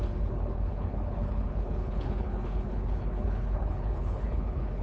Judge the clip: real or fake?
fake